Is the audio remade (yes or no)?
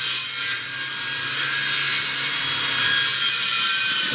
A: no